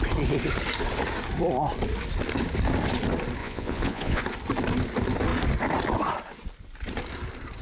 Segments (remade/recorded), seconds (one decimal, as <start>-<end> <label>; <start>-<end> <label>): 0.0-3.4 recorded; 3.4-4.2 remade; 4.2-7.6 recorded